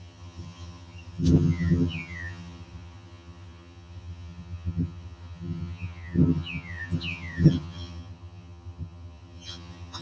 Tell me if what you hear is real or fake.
fake